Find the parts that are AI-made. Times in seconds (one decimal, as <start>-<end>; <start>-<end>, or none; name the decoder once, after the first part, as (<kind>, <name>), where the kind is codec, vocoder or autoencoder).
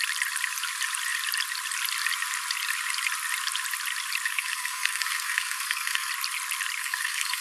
4.3-6.1 (codec, SNAC); 6.8-7.4